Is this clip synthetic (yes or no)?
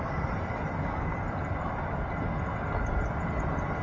no